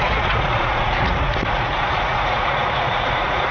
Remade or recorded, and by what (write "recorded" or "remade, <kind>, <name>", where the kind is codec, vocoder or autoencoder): remade, vocoder, Vocos